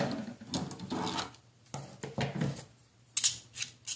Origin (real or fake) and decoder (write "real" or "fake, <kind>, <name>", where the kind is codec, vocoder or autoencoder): real